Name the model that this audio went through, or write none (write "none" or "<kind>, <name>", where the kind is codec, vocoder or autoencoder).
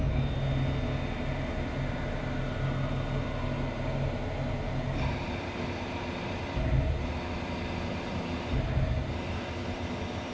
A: none